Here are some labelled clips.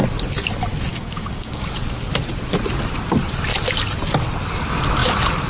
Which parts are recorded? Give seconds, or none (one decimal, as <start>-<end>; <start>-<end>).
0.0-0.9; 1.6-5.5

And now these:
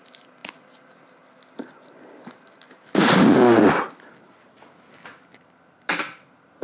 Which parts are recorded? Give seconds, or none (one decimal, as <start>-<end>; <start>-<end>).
0.0-6.6

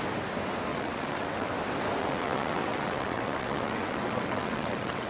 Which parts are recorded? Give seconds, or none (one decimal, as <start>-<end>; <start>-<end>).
0.0-0.7; 1.5-2.0

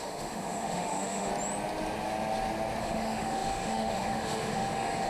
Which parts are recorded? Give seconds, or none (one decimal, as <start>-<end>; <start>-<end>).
1.3-2.8

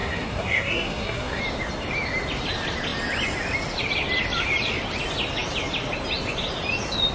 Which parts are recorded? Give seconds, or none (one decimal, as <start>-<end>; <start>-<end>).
1.4-7.1